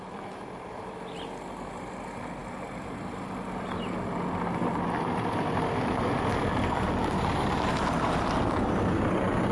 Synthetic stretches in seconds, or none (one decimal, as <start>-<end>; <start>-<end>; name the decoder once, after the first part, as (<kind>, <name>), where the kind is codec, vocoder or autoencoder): none